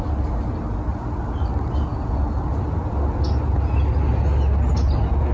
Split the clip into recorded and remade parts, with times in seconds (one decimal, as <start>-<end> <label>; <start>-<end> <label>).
0.0-5.3 recorded